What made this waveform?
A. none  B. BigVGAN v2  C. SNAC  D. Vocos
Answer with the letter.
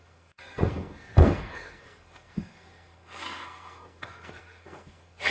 C